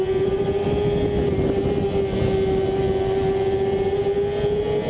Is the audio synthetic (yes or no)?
no